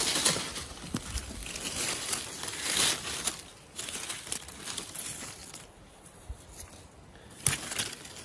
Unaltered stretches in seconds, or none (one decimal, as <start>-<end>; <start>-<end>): 0.0-8.2